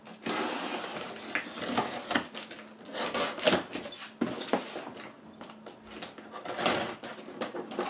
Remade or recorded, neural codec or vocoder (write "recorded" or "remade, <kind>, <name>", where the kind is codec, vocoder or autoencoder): recorded